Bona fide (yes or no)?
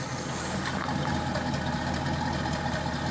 yes